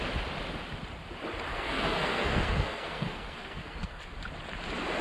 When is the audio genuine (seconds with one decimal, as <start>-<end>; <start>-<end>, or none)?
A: 0.0-1.5; 4.0-5.0